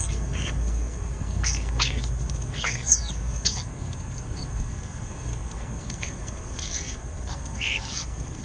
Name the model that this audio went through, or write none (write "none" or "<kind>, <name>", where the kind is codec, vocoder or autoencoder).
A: codec, SNAC